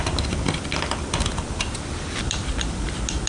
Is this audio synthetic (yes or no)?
yes